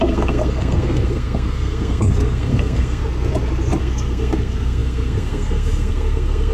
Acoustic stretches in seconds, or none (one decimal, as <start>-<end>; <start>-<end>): 3.0-3.8